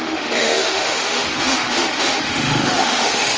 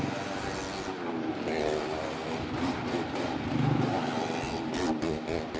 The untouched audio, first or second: second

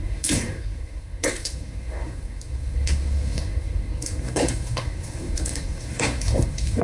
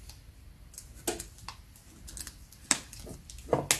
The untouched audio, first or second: second